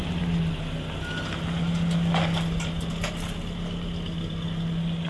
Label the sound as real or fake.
real